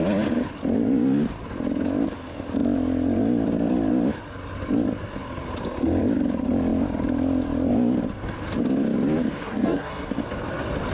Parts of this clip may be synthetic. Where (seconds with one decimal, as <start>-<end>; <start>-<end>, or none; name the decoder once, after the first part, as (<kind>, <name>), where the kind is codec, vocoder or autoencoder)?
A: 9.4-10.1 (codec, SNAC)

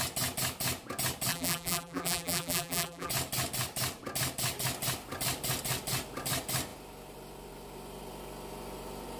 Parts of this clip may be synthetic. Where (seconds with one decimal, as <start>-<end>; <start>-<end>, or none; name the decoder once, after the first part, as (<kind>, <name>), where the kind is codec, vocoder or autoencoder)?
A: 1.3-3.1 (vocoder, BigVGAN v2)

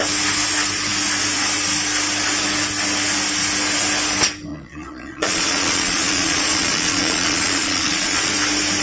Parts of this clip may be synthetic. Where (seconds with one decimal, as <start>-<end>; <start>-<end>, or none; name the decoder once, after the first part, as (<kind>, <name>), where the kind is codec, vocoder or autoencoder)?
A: 4.5-8.3 (vocoder, Vocos)

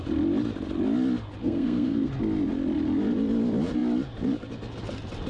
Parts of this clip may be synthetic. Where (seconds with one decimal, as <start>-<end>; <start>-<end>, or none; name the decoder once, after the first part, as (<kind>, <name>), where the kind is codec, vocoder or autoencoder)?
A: 1.4-2.1 (codec, SNAC)